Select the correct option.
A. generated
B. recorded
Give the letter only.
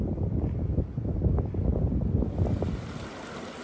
B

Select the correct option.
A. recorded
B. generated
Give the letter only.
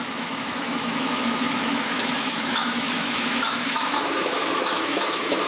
B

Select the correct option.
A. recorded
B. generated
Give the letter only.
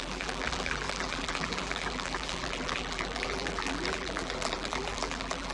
B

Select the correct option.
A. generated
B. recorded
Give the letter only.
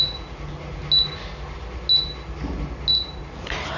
B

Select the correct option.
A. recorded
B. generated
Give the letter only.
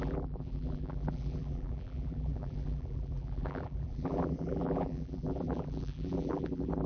B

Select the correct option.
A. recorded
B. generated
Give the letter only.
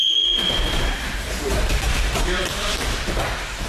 B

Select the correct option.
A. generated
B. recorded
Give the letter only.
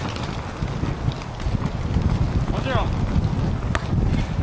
B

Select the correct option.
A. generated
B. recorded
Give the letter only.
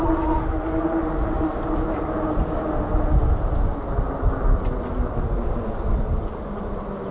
B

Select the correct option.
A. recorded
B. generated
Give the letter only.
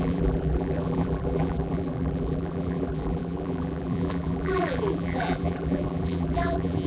B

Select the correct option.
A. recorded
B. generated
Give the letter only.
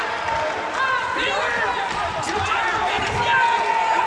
A